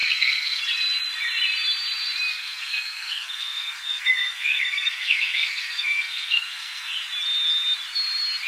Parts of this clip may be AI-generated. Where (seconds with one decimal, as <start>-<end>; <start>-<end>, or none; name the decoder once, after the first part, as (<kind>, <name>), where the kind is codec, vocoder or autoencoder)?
0.0-0.6 (codec, SNAC); 2.3-6.9